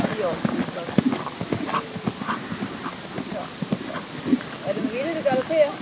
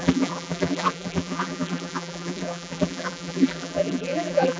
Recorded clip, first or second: first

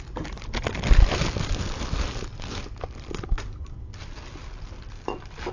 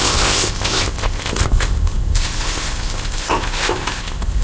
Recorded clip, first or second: first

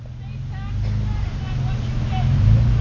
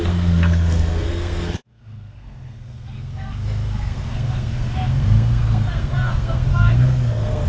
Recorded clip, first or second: first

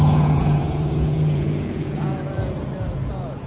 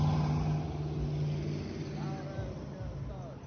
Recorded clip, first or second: second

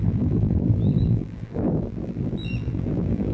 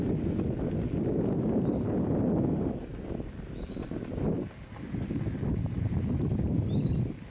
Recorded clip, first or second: second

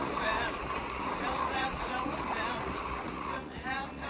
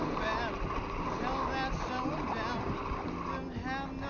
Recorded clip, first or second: second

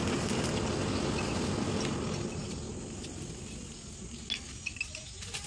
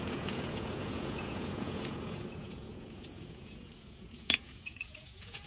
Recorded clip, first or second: first